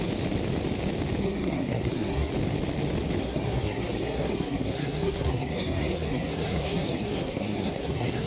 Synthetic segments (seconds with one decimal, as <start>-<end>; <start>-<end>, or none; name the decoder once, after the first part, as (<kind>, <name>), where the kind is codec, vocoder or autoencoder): 1.2-2.3 (codec, SNAC); 3.2-8.3